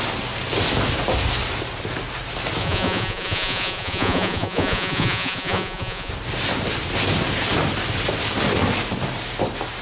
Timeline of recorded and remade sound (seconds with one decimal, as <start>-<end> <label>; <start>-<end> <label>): 0.0-2.6 recorded; 2.6-6.1 remade; 6.1-9.8 recorded